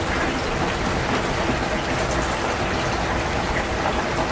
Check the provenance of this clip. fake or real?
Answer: real